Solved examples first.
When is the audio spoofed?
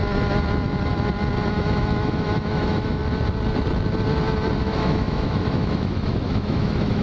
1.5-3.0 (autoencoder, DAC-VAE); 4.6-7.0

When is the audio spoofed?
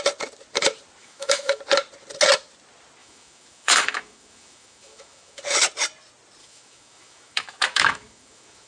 1.0-1.6 (autoencoder, DAC-VAE); 3.0-5.4; 6.4-8.7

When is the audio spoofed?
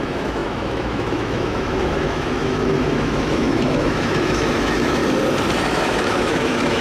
0.0-5.0 (autoencoder, DAC-VAE); 5.7-6.8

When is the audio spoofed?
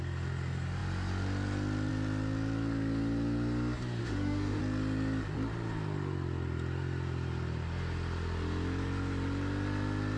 4.0-4.6 (autoencoder, DAC-VAE)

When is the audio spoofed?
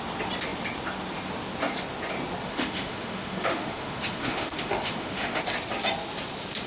2.4-5.4 (autoencoder, DAC-VAE)